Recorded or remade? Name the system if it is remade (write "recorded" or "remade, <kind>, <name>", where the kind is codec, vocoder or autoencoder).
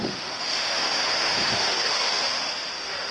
remade, autoencoder, DAC-VAE